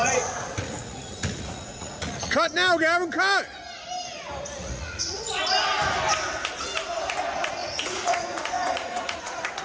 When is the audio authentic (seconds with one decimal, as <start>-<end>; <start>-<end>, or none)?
2.5-4.6; 5.4-7.6